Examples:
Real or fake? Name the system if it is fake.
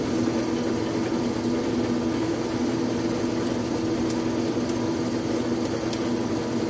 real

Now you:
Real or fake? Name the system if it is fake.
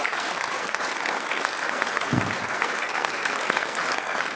fake, codec, SNAC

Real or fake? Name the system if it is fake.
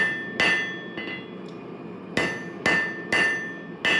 real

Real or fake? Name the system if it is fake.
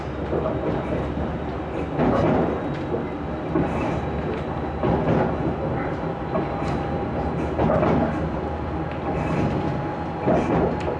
real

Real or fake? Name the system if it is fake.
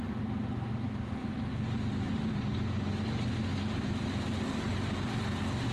real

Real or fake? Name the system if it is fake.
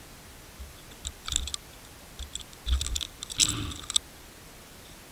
real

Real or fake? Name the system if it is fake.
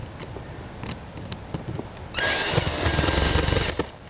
real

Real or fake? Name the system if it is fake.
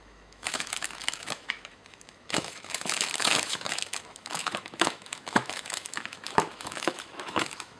fake, autoencoder, DAC-VAE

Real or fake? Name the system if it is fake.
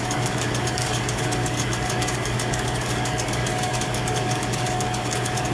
fake, codec, DAC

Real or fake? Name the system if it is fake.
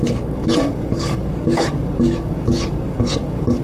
fake, codec, DAC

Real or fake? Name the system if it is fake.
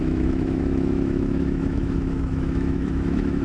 fake, autoencoder, DAC-VAE